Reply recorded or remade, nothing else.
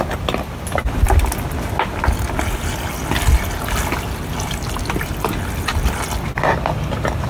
recorded